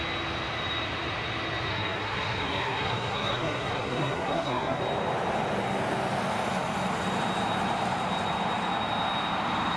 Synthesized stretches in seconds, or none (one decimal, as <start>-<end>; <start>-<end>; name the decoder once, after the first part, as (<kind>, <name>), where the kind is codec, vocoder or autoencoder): 1.7-4.8 (codec, SNAC)